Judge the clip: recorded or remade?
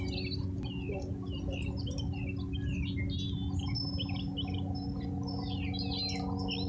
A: recorded